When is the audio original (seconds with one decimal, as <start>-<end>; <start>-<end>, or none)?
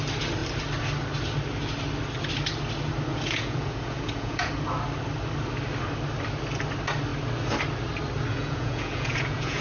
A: 0.0-3.1; 4.5-8.3